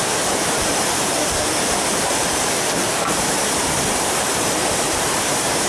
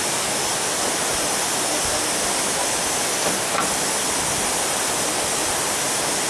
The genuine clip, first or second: second